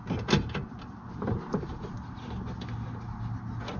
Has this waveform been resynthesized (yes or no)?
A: no